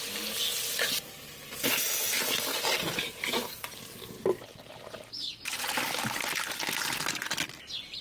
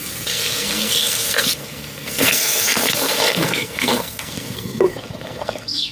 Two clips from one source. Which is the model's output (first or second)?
second